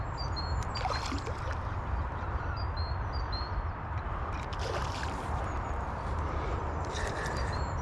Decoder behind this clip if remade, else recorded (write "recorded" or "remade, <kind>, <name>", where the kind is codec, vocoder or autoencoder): remade, vocoder, BigVGAN v2